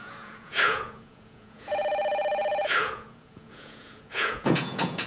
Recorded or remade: remade